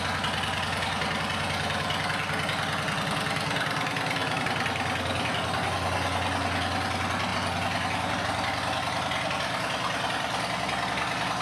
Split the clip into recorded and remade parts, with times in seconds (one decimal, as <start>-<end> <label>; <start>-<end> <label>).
0.0-11.4 recorded